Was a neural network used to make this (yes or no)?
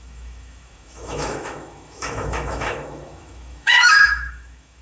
yes